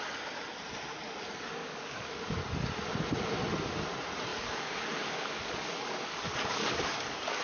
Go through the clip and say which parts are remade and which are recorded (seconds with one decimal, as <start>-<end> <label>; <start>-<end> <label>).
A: 0.0-1.6 recorded; 1.6-2.4 remade; 2.4-4.3 recorded; 4.3-7.4 remade